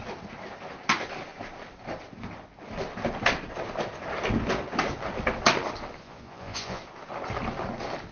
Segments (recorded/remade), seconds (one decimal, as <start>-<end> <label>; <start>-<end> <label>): 0.0-6.0 recorded; 6.0-6.8 remade; 6.8-8.1 recorded